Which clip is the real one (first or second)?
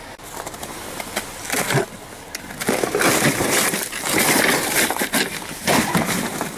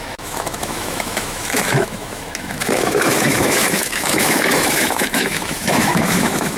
first